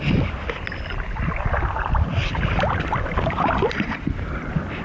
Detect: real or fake fake